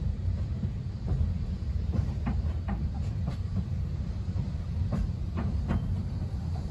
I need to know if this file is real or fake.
fake